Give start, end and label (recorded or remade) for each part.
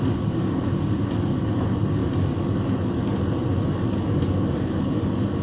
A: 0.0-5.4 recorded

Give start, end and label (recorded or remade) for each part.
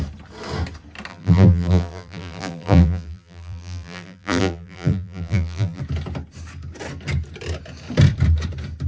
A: 0.0-1.1 recorded; 1.1-5.8 remade; 5.8-8.9 recorded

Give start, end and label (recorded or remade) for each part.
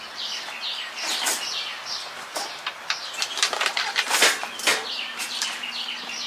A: 0.0-4.7 recorded; 4.7-6.3 remade